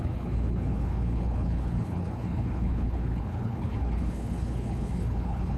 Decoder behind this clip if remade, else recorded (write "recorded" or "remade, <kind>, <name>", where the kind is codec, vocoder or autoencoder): remade, codec, HILCodec